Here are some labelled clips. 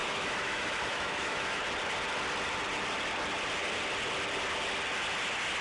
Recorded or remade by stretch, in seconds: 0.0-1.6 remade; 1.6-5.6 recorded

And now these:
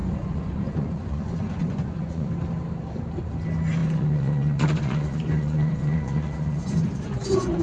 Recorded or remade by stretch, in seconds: 0.0-2.3 remade; 2.3-3.8 recorded; 3.8-7.6 remade

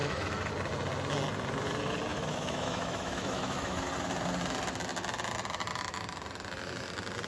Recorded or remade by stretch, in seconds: 0.0-0.5 remade; 0.5-2.1 recorded; 2.1-3.8 remade; 3.8-7.3 recorded

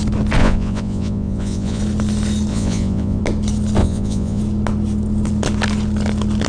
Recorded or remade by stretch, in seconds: 0.0-0.4 recorded; 0.4-1.8 remade; 1.8-2.5 recorded; 2.5-3.2 remade; 3.2-3.8 recorded; 3.8-4.4 remade; 4.4-6.5 recorded